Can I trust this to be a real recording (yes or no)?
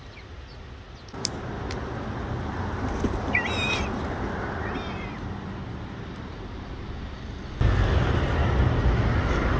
yes